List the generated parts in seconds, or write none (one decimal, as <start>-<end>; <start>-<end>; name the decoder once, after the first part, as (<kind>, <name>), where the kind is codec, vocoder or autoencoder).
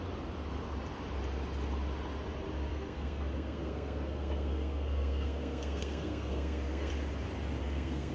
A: 2.7-6.9 (codec, SNAC); 7.6-8.1